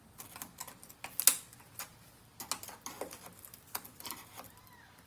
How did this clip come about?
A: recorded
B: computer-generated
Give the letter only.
A